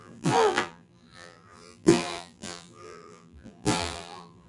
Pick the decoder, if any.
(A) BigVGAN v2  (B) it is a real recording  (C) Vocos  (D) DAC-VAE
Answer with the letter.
A